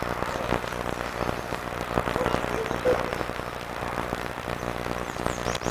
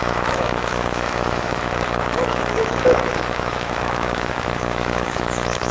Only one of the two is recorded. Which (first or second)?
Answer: first